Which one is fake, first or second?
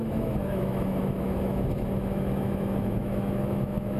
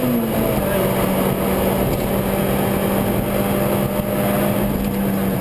first